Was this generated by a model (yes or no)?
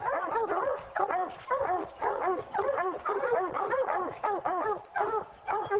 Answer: yes